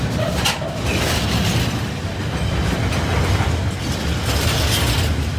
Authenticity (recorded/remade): recorded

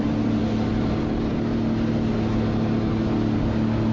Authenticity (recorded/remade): recorded